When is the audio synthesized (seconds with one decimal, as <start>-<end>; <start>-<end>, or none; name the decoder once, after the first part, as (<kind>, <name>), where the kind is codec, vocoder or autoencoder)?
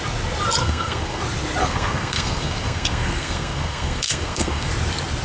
0.6-1.2 (codec, SNAC); 1.6-4.7